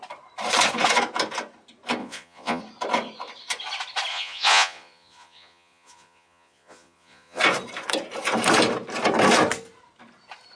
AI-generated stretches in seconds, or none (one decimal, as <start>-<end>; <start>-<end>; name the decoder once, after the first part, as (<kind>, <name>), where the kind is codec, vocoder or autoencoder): 2.0-2.6 (vocoder, Vocos); 4.1-7.4